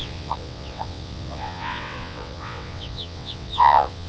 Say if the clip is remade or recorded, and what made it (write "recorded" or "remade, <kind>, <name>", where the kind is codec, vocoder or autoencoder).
remade, vocoder, WaveNeXt